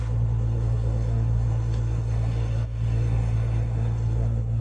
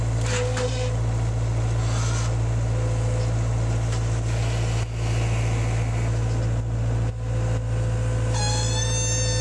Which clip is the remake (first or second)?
first